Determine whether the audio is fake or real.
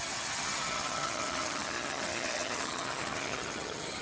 fake